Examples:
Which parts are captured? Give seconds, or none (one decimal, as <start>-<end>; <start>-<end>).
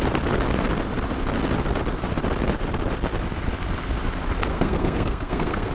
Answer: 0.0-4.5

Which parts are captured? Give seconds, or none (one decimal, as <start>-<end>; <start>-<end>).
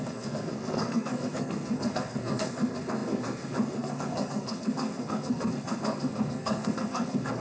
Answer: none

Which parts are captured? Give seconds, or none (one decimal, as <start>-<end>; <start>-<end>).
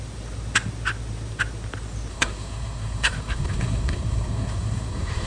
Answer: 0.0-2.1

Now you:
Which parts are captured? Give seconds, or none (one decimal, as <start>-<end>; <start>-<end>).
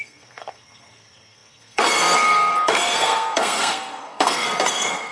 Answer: none